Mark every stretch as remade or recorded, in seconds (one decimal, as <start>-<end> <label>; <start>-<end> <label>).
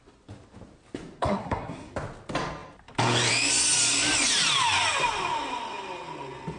0.0-1.2 recorded; 1.2-1.9 remade; 1.9-6.6 recorded